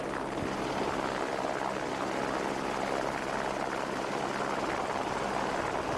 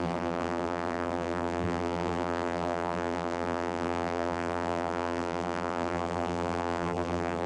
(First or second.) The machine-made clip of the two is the second